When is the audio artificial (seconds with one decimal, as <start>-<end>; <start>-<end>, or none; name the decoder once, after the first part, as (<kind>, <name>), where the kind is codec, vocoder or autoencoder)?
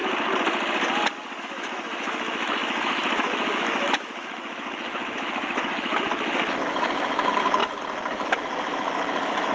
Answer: 1.4-9.5 (autoencoder, DAC-VAE)